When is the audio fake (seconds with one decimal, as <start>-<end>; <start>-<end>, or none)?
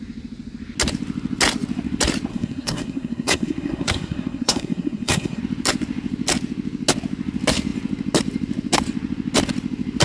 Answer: 2.3-5.4